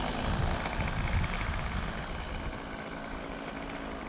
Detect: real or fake real